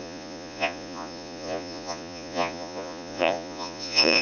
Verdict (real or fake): fake